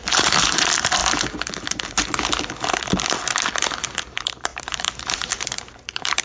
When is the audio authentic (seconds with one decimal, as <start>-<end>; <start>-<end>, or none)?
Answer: 1.0-3.9